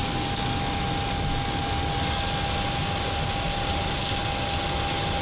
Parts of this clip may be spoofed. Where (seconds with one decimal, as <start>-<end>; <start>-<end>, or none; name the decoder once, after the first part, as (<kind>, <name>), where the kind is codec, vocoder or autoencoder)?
none